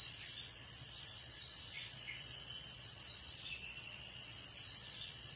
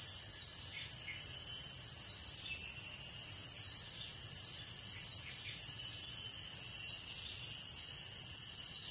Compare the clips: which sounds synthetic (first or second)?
first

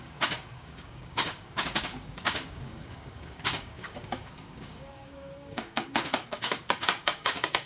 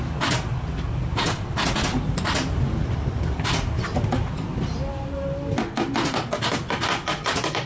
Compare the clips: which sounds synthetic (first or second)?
first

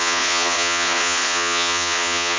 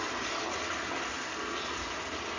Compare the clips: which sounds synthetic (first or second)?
first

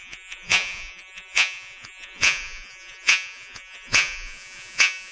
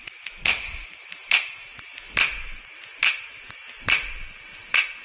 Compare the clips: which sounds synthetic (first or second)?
first